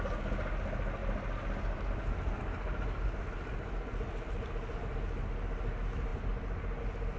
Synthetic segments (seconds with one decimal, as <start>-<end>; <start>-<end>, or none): none